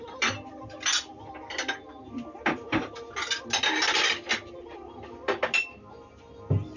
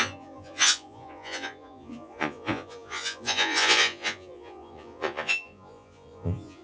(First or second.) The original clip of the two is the first